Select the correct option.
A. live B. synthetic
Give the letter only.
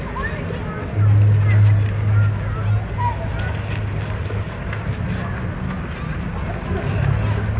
A